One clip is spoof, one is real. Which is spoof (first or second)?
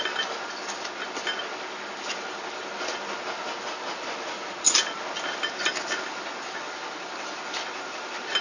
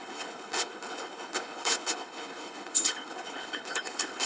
second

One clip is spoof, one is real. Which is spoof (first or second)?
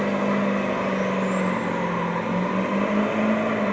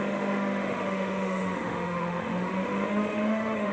second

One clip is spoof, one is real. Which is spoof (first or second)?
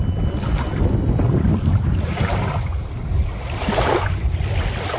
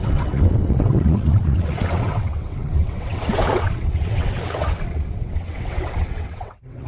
second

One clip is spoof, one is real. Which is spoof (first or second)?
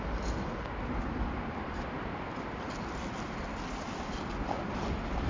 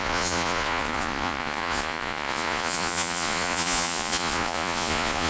second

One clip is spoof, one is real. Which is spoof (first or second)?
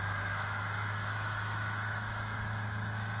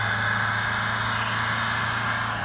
first